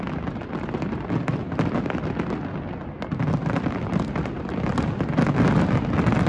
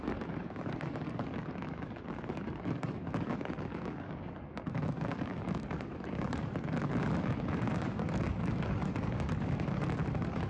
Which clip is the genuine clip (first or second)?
first